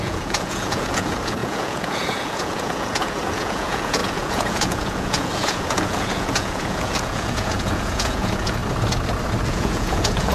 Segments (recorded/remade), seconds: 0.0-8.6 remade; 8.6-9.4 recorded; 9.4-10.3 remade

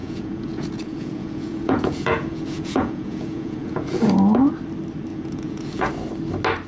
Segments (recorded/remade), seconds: 0.0-4.0 remade; 4.0-5.1 recorded; 5.1-5.9 remade; 5.9-6.7 recorded

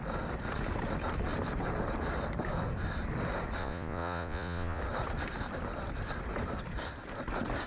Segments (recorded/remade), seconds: 0.0-3.6 recorded; 3.6-4.8 remade; 4.8-7.7 recorded

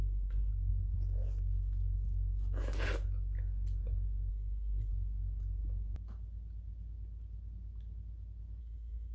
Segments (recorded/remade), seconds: 0.0-0.5 remade; 0.5-4.3 recorded; 4.3-4.9 remade; 4.9-8.6 recorded; 8.6-9.1 remade

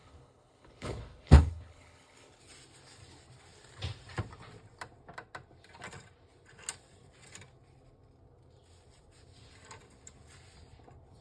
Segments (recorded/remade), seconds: 0.0-2.4 remade; 2.4-11.2 recorded